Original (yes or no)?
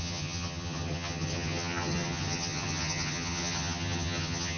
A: no